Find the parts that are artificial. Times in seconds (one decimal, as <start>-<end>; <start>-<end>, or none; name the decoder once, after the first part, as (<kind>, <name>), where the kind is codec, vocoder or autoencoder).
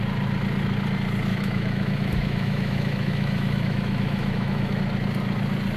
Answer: 1.3-4.8 (autoencoder, DAC-VAE)